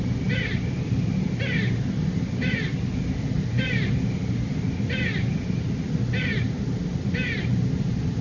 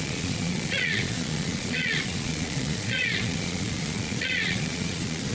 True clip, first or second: first